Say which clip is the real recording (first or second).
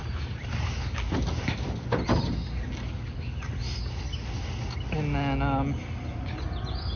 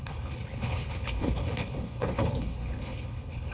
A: first